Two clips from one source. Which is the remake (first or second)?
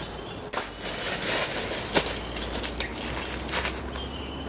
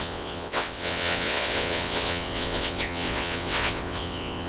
second